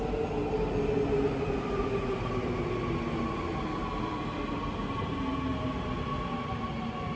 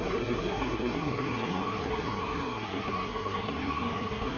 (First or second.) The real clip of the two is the first